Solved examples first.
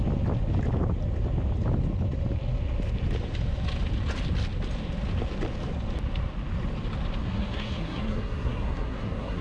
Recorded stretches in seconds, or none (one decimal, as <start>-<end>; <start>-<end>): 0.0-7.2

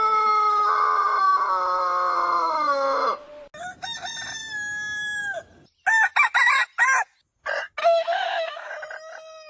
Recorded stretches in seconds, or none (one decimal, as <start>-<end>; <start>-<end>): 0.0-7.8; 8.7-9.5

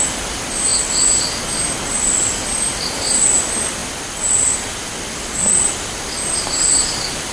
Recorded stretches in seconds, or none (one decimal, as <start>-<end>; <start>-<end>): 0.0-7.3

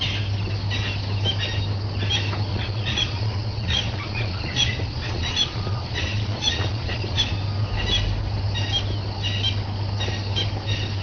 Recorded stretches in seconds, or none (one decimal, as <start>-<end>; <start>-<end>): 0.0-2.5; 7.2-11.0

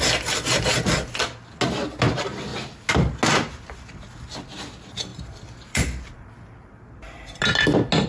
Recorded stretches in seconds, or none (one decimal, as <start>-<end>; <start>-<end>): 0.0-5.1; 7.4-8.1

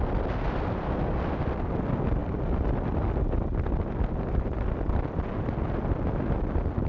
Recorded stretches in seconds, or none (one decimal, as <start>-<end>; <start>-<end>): 0.0-6.9

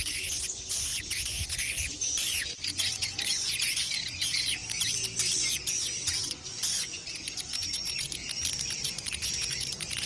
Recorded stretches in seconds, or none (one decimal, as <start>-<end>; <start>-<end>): 4.6-5.4; 8.2-8.7